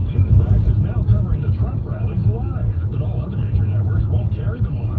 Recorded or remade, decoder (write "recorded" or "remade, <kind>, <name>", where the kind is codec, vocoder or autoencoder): remade, codec, DAC